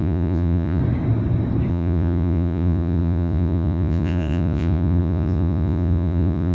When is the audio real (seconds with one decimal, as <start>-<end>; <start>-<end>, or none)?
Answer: 0.8-1.7